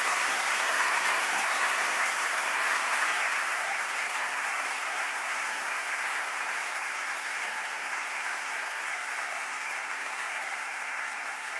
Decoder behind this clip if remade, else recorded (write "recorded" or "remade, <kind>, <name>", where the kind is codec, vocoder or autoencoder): remade, codec, SNAC